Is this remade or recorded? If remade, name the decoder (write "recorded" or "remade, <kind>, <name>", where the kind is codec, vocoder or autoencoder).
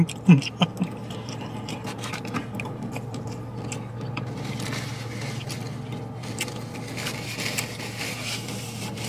recorded